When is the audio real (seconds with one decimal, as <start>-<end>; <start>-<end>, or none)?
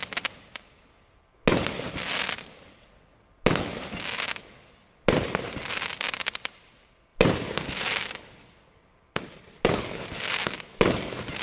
0.0-11.4